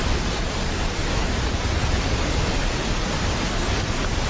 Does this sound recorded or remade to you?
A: recorded